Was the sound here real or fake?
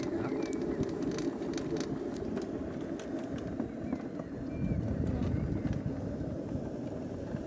real